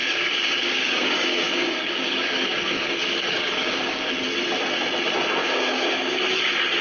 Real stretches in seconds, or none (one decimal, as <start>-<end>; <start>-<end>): 4.1-5.4; 6.2-6.8